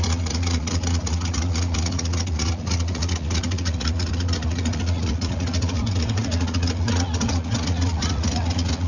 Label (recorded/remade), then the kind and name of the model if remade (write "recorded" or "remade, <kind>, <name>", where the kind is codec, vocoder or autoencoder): remade, vocoder, Vocos